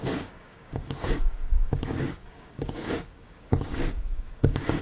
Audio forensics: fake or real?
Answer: fake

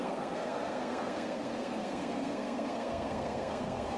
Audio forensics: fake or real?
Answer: fake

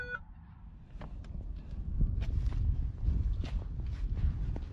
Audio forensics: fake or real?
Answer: real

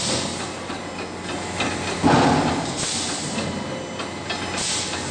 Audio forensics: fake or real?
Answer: real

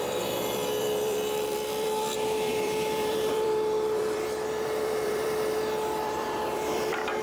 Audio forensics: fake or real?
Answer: fake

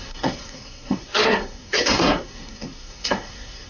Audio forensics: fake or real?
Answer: fake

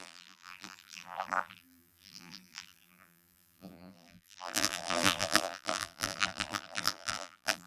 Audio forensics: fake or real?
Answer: fake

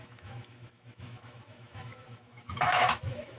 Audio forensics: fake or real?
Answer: fake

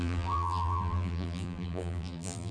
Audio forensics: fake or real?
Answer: fake